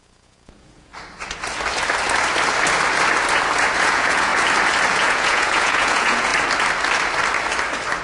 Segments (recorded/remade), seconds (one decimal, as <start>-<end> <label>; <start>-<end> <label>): 0.0-0.9 remade; 0.9-3.8 recorded; 3.8-4.3 remade; 4.3-4.9 recorded; 4.9-6.3 remade; 6.3-8.0 recorded